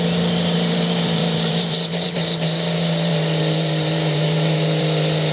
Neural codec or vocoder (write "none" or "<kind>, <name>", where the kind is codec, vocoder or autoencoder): vocoder, BigVGAN v2